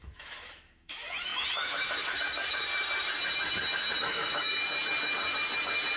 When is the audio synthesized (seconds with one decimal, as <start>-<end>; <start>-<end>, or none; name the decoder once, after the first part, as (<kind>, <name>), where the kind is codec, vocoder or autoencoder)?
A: 0.0-2.7 (autoencoder, DAC-VAE); 4.0-4.6

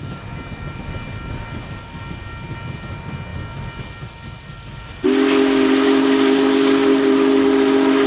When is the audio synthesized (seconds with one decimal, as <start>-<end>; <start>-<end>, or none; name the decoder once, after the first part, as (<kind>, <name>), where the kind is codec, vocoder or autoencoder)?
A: none